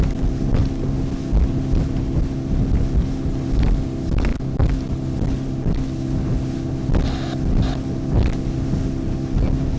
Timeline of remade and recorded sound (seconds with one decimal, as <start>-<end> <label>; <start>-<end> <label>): 0.0-9.8 recorded